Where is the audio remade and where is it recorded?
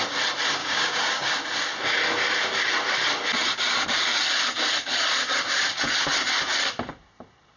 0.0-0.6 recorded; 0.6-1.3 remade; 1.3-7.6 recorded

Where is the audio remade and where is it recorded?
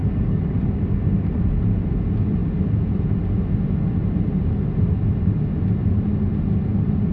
0.0-0.7 remade; 0.7-7.1 recorded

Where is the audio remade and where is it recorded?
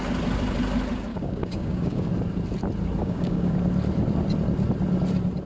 0.0-1.1 recorded; 1.1-2.1 remade; 2.1-3.0 recorded; 3.0-3.5 remade; 3.5-5.5 recorded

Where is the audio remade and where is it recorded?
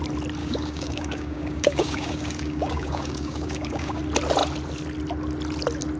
0.0-0.4 recorded; 0.4-4.0 remade; 4.0-6.0 recorded